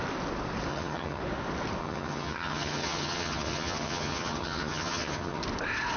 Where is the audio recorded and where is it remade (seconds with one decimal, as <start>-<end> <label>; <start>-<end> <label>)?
0.0-0.7 recorded; 0.7-1.2 remade; 1.2-1.8 recorded; 1.8-5.4 remade; 5.4-6.0 recorded